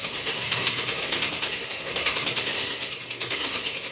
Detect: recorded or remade remade